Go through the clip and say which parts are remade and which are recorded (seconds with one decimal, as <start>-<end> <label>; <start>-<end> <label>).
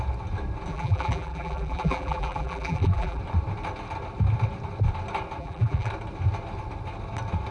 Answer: 0.0-0.7 recorded; 0.7-3.2 remade; 3.2-5.4 recorded; 5.4-5.9 remade; 5.9-7.5 recorded